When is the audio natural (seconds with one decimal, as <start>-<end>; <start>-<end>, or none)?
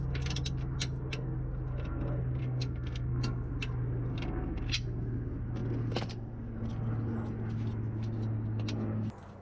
0.0-2.4; 3.5-4.1; 4.6-9.4